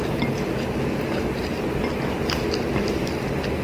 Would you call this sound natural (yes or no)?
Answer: yes